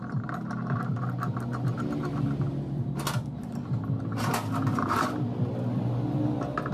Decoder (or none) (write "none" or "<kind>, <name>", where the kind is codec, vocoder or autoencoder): none